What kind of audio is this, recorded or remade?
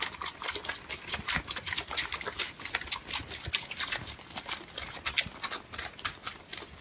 recorded